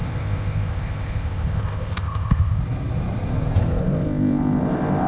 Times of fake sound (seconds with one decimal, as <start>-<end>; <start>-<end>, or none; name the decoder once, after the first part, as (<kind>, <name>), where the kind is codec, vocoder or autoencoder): 0.0-2.6 (codec, ZipCodec); 3.8-5.1